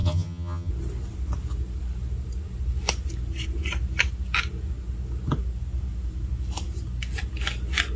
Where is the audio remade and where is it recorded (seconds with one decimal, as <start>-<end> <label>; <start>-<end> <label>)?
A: 0.0-0.7 remade; 0.7-8.0 recorded